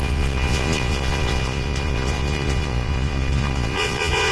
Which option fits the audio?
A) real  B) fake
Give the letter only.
B